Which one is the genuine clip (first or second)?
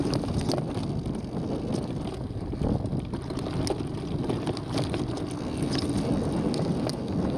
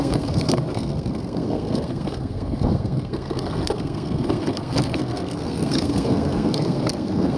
first